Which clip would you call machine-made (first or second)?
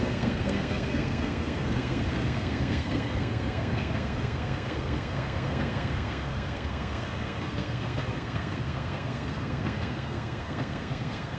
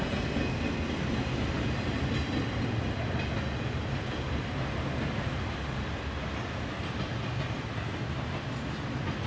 first